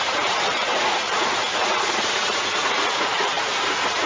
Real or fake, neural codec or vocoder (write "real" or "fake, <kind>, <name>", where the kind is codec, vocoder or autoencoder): fake, vocoder, Vocos